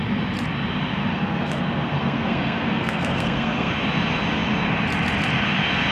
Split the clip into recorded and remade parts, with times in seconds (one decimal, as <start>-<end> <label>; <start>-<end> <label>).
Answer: 0.0-1.1 recorded; 1.1-3.7 remade; 3.7-5.9 recorded

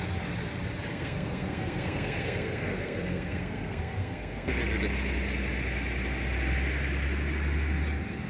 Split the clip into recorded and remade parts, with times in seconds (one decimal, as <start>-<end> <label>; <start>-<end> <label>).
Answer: 0.0-0.9 recorded; 0.9-4.5 remade; 4.5-8.3 recorded

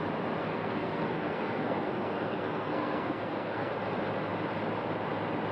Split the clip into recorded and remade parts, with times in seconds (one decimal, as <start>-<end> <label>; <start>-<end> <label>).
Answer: 0.0-0.4 recorded; 0.4-3.7 remade; 3.7-5.5 recorded

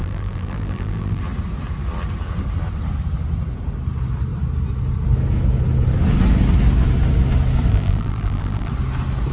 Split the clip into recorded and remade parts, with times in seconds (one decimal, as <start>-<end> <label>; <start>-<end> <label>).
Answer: 0.0-1.2 remade; 1.2-7.7 recorded; 7.7-8.7 remade; 8.7-9.3 recorded

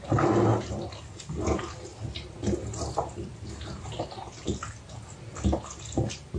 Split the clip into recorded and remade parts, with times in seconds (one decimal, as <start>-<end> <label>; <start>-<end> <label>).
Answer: 0.0-6.4 recorded